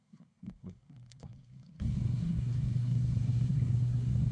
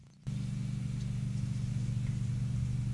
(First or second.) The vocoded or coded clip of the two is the first